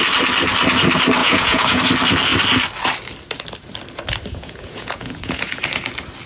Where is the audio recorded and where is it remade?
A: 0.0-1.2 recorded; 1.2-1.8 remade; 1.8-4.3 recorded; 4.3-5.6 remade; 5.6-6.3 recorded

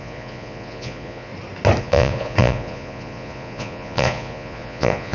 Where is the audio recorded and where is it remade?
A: 0.0-1.3 remade; 1.3-1.8 recorded; 1.8-5.1 remade

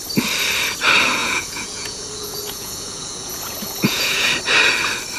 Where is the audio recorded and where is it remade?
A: 0.0-1.2 recorded; 1.2-4.3 remade; 4.3-5.2 recorded

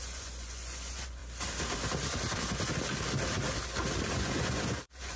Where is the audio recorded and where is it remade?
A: 0.0-1.2 remade; 1.2-4.1 recorded; 4.1-5.2 remade

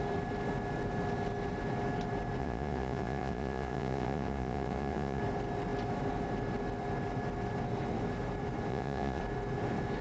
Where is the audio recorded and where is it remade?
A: 0.0-2.4 recorded; 2.4-5.2 remade; 5.2-8.7 recorded; 8.7-9.2 remade; 9.2-10.0 recorded

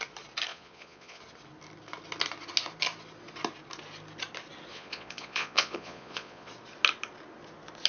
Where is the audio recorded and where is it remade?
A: 0.0-0.5 recorded; 0.5-1.2 remade; 1.2-4.7 recorded; 4.7-6.5 remade; 6.5-7.9 recorded

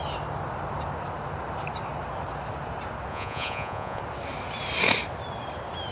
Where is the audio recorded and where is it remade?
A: 0.0-3.1 recorded; 3.1-4.0 remade; 4.0-5.9 recorded